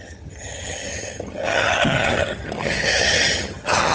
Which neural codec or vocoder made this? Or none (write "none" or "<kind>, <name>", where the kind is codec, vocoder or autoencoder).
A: vocoder, HiFi-GAN